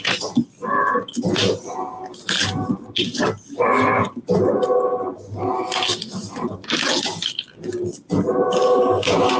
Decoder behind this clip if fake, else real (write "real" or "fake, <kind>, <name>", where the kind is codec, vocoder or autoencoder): real